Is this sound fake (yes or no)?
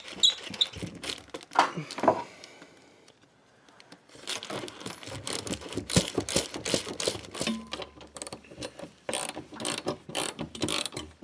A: no